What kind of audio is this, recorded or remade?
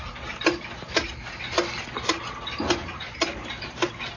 recorded